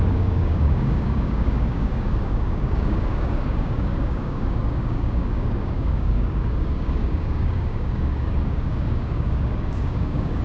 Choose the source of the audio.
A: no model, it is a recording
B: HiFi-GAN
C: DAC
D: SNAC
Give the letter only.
C